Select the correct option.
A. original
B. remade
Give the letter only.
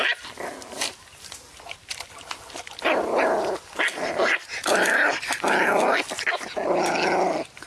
A